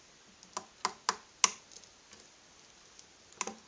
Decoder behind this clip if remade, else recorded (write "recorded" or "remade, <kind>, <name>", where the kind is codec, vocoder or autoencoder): recorded